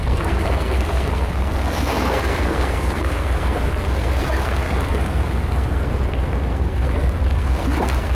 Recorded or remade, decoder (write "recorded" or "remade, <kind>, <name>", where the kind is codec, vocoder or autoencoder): remade, codec, SNAC